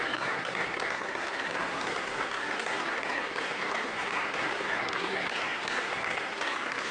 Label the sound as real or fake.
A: fake